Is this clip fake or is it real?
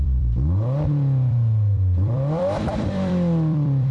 fake